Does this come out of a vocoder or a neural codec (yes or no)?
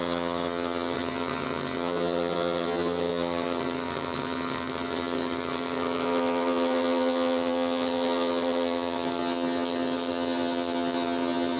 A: yes